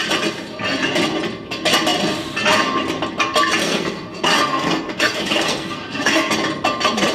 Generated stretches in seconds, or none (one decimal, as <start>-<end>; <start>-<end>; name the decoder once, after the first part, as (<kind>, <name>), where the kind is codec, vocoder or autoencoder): 3.6-6.3 (codec, SNAC)